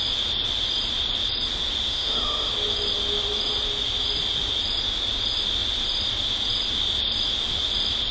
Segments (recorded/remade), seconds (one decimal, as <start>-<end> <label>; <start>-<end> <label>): 0.0-1.9 recorded; 1.9-2.5 remade; 2.5-8.1 recorded